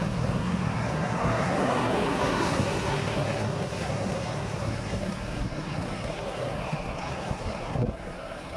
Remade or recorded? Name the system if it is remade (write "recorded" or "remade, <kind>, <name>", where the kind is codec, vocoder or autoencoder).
remade, codec, SNAC